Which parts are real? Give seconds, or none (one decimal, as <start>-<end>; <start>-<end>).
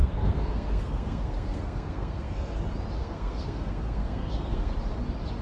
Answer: 2.6-3.0; 4.7-5.4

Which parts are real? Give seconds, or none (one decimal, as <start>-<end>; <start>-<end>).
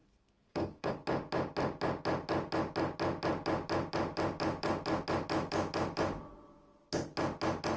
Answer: 0.9-7.8